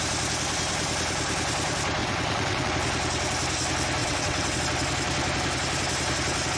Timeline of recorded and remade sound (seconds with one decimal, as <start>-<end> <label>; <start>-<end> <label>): 0.0-2.0 recorded; 2.0-2.7 remade; 2.7-4.0 recorded; 4.0-4.6 remade; 4.6-6.6 recorded